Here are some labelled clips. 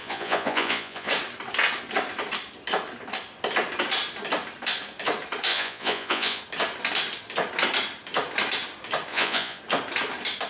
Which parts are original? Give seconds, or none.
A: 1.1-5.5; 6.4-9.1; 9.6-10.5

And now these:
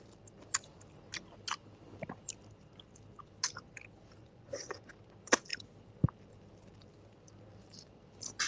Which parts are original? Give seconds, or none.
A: 0.0-4.2; 4.9-8.5

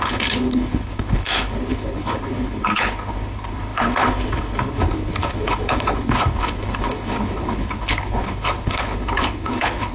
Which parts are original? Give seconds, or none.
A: none

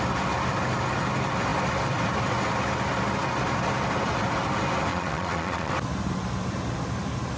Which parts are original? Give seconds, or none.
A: 0.0-4.9; 5.7-7.4